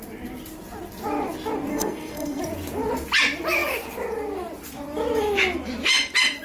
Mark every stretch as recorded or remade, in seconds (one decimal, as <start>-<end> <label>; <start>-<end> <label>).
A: 0.0-1.7 recorded; 1.7-2.4 remade; 2.4-6.4 recorded